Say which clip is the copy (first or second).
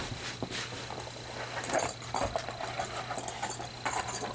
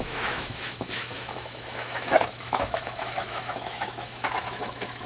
second